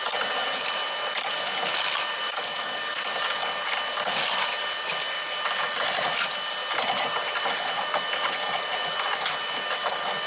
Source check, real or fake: real